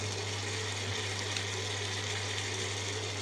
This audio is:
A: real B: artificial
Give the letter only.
A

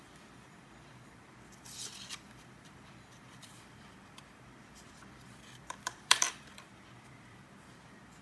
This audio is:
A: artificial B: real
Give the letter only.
A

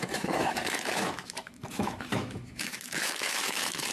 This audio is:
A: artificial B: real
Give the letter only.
A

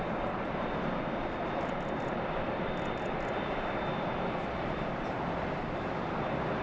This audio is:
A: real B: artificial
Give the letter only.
A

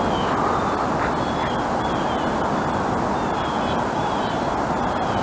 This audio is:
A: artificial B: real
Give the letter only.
B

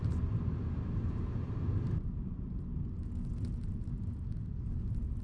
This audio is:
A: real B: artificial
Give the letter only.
A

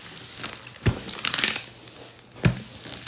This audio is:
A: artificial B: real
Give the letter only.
B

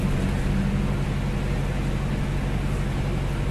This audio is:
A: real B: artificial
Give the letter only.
A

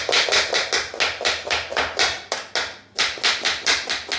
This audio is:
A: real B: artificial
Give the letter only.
A